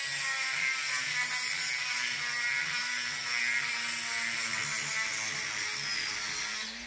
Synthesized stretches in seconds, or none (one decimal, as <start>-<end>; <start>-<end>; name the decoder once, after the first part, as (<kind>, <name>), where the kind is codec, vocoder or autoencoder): none